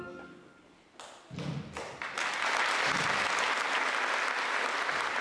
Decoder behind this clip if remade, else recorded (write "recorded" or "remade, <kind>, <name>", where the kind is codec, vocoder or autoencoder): recorded